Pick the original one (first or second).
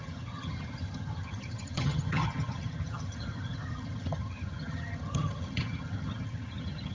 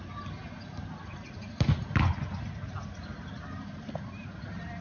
second